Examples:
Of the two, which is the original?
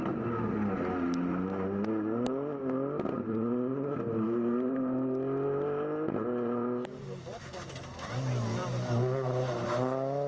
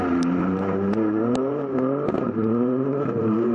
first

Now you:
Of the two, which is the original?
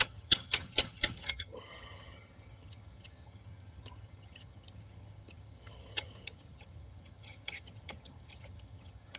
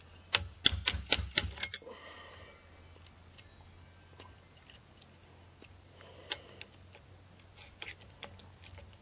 second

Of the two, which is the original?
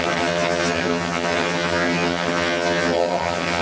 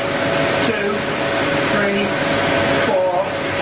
second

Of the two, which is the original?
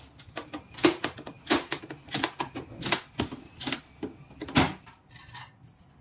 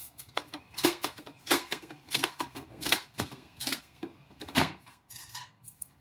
first